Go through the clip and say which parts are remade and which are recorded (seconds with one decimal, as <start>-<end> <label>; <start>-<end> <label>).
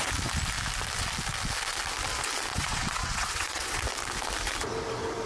0.0-2.5 recorded; 2.5-3.8 remade; 3.8-5.3 recorded